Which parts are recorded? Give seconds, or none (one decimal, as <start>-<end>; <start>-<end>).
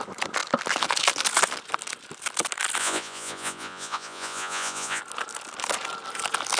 0.0-2.8; 5.0-6.6